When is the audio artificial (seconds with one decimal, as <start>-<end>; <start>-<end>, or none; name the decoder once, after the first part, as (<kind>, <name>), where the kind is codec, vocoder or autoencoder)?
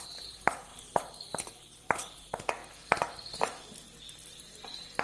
0.0-2.6 (vocoder, BigVGAN v2); 4.1-5.0